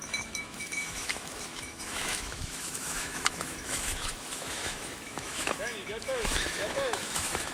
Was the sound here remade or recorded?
remade